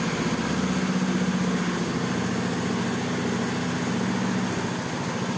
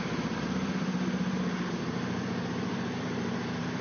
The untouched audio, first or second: first